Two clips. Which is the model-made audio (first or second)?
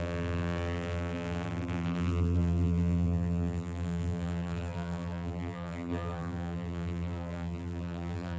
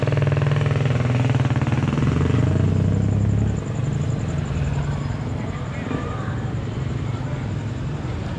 first